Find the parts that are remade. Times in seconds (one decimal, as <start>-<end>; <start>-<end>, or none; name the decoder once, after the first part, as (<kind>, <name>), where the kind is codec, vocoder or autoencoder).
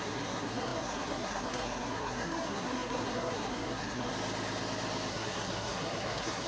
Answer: 0.0-4.1 (codec, SNAC); 5.1-6.5